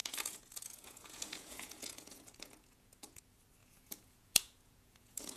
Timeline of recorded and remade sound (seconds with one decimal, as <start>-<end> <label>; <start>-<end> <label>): 0.0-3.2 remade; 3.2-3.6 recorded; 3.6-5.4 remade